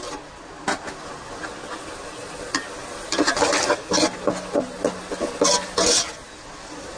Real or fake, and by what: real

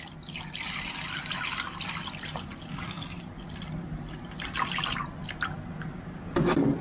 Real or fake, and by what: real